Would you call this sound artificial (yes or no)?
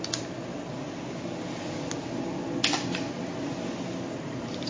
no